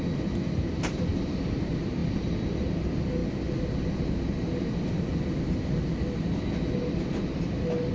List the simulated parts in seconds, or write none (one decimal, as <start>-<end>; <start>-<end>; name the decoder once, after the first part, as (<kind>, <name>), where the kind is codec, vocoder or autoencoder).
1.1-1.6 (vocoder, BigVGAN v2)